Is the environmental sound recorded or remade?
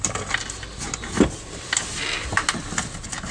recorded